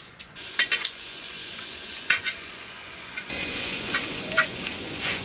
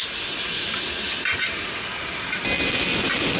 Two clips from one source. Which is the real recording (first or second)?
second